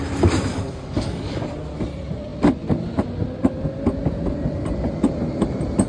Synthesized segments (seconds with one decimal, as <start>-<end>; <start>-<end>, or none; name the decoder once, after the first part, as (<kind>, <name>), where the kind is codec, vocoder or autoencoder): 0.5-1.5 (codec, DAC)